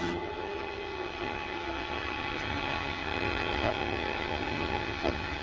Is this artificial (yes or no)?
yes